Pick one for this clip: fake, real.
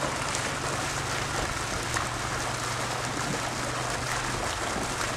real